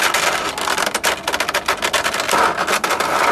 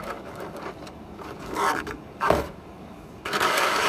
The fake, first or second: second